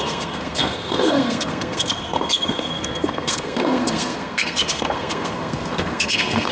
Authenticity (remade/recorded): remade